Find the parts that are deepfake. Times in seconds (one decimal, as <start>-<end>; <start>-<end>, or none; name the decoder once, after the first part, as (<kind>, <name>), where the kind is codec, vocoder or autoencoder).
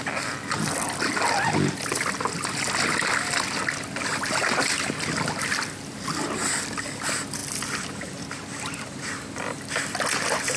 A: none